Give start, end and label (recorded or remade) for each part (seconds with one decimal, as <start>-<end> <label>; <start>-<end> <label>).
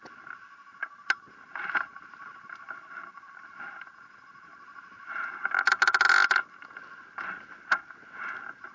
0.0-1.9 recorded; 1.9-2.6 remade; 2.6-4.5 recorded; 4.5-5.5 remade; 5.5-8.7 recorded